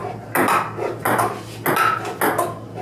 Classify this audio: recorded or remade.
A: recorded